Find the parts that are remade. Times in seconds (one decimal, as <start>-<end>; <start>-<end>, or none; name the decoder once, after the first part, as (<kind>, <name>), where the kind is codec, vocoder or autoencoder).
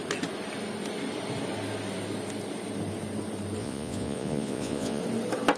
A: 3.6-5.0 (vocoder, Vocos)